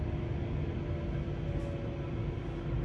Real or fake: real